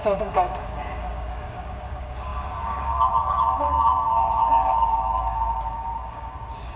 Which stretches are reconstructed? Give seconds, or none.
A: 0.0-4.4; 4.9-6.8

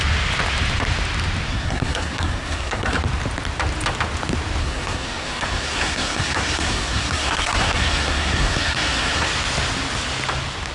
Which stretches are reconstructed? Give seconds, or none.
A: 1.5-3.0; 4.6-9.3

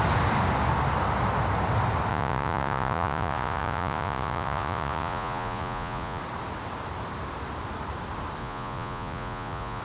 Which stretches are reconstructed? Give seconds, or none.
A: 2.1-6.2; 8.4-9.8

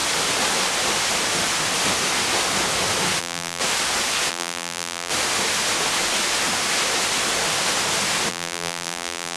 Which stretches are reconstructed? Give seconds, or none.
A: 3.2-3.6; 4.3-5.1; 8.3-9.4

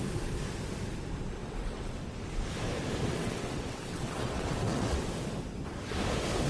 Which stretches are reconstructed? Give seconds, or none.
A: 1.4-2.0; 3.1-5.0